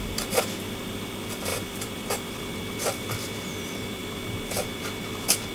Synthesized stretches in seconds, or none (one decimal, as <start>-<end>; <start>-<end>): 1.5-4.8

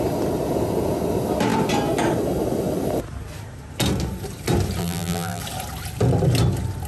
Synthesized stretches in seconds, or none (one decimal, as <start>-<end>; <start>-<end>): 4.8-5.4

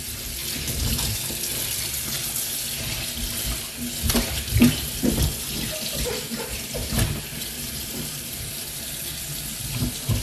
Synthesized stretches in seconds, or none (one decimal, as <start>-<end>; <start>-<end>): 7.3-8.4

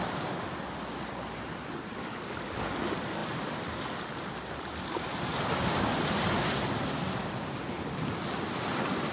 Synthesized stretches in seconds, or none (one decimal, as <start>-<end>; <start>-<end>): none

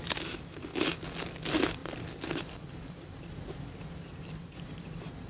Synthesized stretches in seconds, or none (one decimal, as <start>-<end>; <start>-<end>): 1.8-5.3

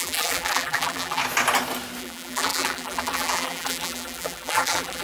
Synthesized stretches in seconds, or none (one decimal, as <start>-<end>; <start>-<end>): 0.0-1.2; 2.0-5.0

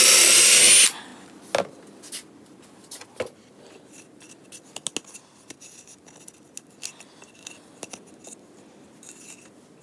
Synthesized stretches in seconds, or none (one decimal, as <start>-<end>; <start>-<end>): none

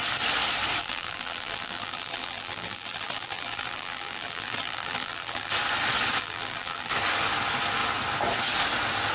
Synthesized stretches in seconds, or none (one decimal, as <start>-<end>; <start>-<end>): 0.8-5.5; 6.2-6.9